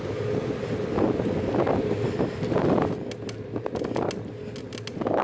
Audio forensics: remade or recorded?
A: recorded